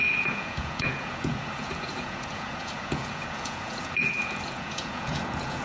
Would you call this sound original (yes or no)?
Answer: no